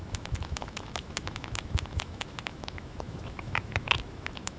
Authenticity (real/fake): fake